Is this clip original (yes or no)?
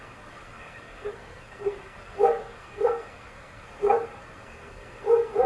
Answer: no